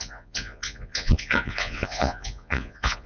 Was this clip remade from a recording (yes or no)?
yes